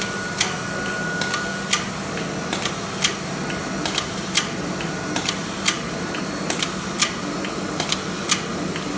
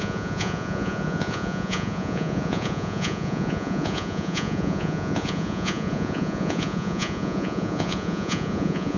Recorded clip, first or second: first